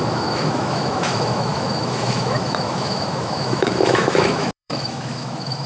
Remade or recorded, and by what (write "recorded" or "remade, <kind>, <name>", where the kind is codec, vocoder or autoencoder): remade, autoencoder, DAC-VAE